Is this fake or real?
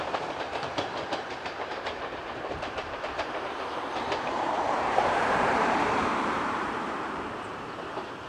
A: fake